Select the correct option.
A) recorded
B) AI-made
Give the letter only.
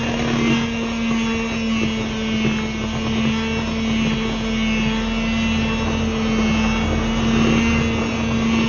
A